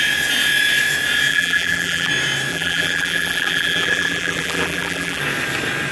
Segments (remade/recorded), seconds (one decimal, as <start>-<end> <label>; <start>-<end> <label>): 0.0-1.3 recorded; 1.3-2.1 remade; 2.1-2.5 recorded; 2.5-5.2 remade; 5.2-5.9 recorded